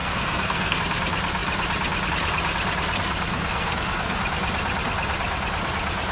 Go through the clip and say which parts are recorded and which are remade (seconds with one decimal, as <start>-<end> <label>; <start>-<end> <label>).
0.0-0.8 remade; 0.8-3.3 recorded; 3.3-4.2 remade; 4.2-6.1 recorded